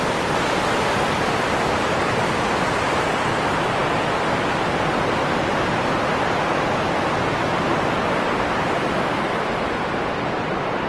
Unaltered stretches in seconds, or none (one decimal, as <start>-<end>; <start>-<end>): 0.0-10.9